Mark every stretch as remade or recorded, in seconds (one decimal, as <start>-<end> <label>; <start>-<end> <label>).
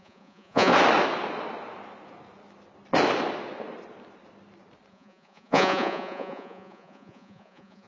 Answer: 0.0-0.7 remade; 0.7-4.9 recorded; 4.9-7.9 remade